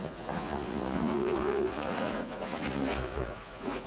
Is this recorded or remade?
remade